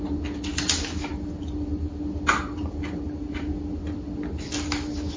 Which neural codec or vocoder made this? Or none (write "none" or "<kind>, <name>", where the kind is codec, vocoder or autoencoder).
none